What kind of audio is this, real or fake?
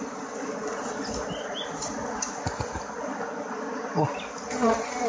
real